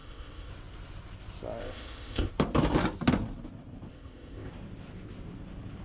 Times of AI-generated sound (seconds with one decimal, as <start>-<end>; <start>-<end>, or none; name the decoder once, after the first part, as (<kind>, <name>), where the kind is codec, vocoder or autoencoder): 0.0-0.5 (codec, ZipCodec); 1.6-2.3; 3.9-4.5